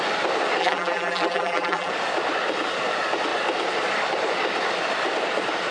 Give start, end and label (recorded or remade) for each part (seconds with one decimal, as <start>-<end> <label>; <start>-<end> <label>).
0.0-0.6 recorded; 0.6-1.9 remade; 1.9-5.7 recorded